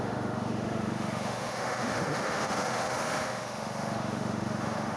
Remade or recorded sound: remade